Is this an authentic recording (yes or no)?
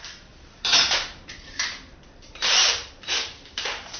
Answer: no